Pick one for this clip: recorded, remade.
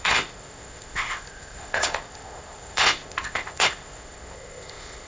remade